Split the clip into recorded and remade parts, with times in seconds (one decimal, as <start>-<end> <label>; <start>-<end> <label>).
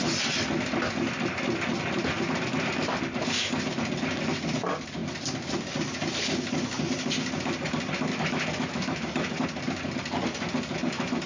0.0-8.1 recorded; 8.1-9.4 remade; 9.4-11.3 recorded